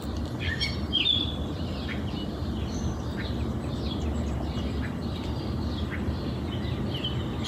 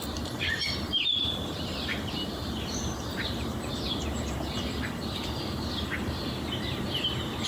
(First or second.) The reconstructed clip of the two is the second